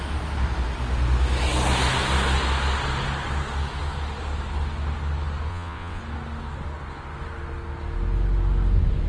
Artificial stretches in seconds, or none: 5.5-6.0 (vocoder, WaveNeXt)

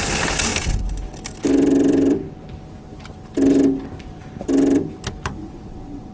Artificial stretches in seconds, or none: 5.4-6.1 (vocoder, WaveNeXt)

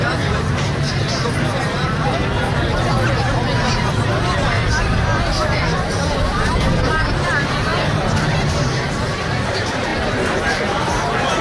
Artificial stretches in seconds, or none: 0.0-2.9 (vocoder, BigVGAN v2); 7.1-9.9; 10.5-11.4